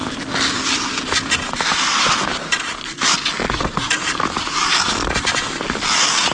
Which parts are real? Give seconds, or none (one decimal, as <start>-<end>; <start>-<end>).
0.0-6.3